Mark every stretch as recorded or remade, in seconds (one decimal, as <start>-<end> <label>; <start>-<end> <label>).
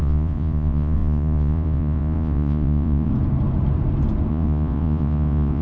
0.0-3.1 remade; 3.1-4.3 recorded; 4.3-5.6 remade